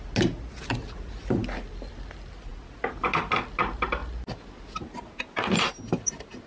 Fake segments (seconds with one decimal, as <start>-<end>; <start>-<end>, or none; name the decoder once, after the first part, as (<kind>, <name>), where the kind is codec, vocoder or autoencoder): none